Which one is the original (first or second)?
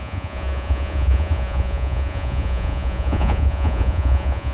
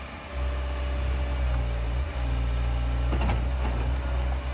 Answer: second